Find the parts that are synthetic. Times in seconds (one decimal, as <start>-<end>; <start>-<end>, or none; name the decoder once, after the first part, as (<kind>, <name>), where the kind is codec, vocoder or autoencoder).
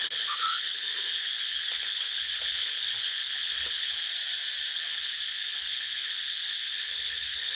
0.0-4.1 (codec, HILCodec); 4.7-7.6